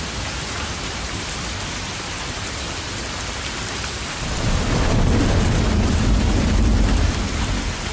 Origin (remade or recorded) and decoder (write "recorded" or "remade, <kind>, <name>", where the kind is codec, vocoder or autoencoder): recorded